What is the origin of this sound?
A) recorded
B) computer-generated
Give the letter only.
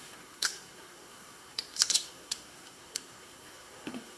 B